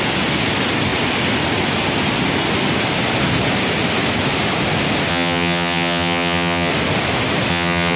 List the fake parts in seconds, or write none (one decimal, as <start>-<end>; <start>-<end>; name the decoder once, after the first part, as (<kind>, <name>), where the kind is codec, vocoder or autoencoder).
5.1-6.7 (vocoder, HiFi-GAN); 7.5-8.0